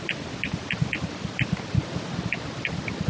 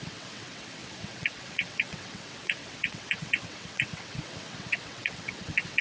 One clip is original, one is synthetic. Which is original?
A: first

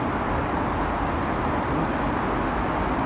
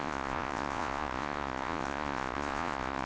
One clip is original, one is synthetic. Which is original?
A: first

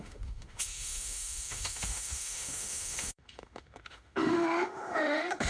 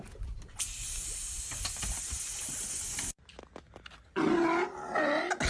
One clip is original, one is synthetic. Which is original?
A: second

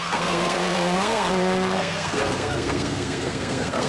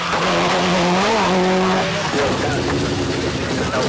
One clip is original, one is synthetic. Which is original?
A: second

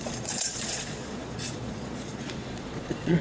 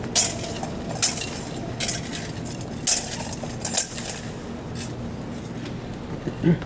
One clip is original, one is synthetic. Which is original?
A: second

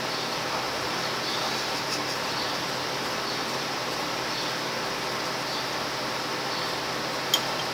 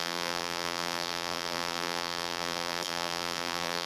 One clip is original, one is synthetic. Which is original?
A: first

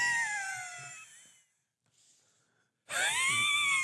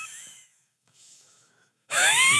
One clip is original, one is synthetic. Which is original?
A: first